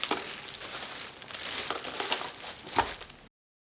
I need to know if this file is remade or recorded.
recorded